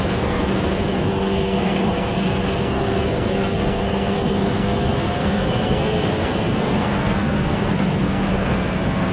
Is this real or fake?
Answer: fake